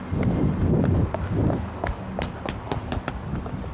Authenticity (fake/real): real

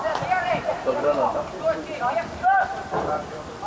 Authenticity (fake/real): fake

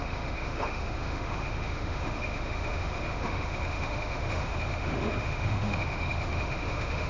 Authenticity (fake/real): fake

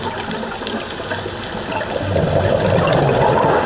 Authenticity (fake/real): real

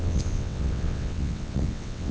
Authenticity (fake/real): fake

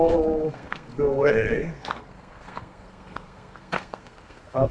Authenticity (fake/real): fake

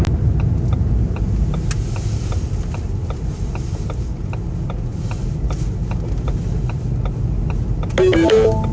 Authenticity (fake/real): real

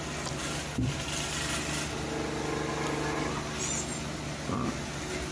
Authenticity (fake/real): real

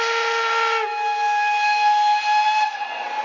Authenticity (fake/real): real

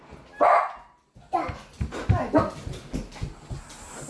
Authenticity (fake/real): real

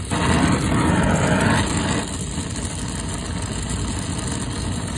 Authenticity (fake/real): real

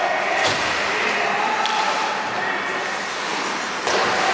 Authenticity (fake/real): real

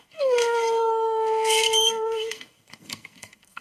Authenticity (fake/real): fake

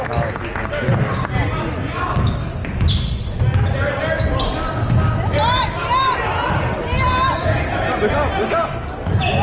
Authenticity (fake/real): real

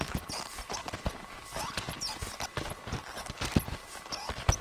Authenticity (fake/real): real